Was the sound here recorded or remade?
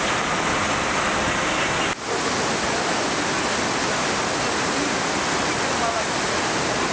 recorded